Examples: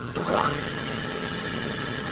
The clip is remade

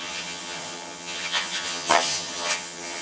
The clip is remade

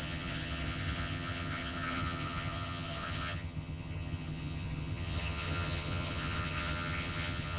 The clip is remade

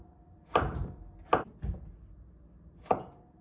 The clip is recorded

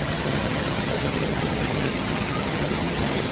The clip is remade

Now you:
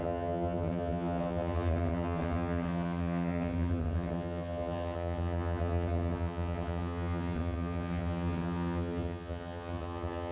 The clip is remade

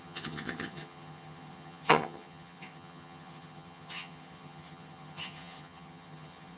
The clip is remade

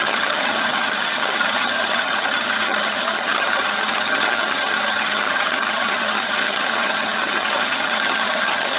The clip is remade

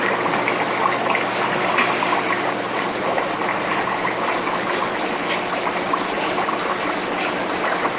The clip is recorded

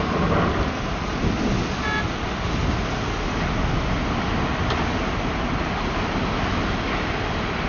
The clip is recorded